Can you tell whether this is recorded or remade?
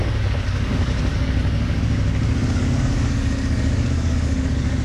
remade